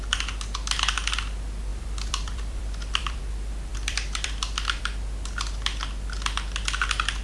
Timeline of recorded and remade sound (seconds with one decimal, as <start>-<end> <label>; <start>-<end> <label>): 0.0-1.7 recorded; 1.7-3.2 remade; 3.2-3.7 recorded; 3.7-4.8 remade; 4.8-7.2 recorded